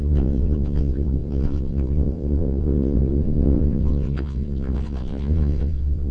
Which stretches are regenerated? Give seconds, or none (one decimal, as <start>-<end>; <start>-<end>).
0.0-6.1